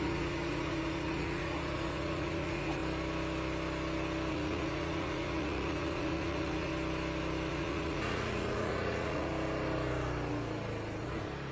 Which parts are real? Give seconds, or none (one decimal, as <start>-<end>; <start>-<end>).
2.8-4.3; 6.7-7.5; 9.3-11.5